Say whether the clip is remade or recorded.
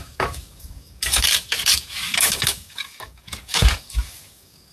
remade